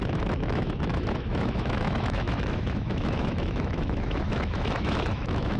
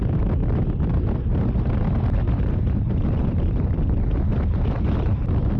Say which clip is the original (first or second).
second